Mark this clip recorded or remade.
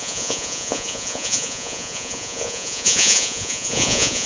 remade